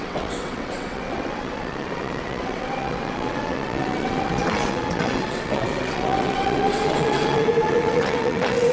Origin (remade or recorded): remade